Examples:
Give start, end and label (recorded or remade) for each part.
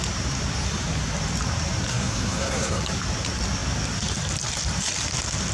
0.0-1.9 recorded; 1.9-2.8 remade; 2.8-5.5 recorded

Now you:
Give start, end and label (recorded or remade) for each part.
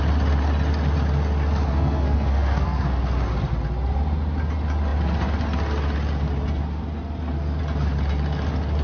0.0-1.7 recorded; 1.7-3.0 remade; 3.0-8.8 recorded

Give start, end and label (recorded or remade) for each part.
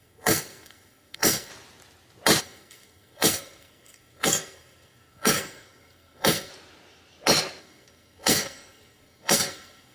0.0-1.5 remade; 1.5-2.4 recorded; 2.4-6.5 remade; 6.5-7.6 recorded; 7.6-9.9 remade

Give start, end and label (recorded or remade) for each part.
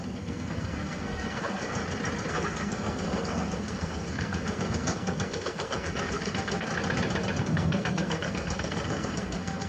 0.0-1.8 remade; 1.8-2.3 recorded; 2.3-6.7 remade; 6.7-7.4 recorded; 7.4-9.7 remade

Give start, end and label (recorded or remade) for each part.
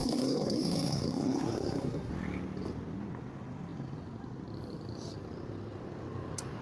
0.0-2.1 remade; 2.1-6.6 recorded